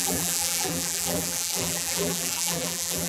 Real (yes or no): no